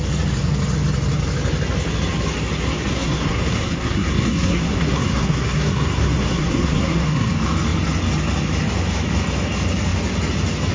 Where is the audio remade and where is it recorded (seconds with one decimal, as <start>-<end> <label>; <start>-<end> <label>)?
0.0-2.9 recorded; 2.9-7.3 remade; 7.3-10.7 recorded